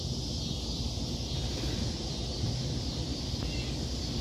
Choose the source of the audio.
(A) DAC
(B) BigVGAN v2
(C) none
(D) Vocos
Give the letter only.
C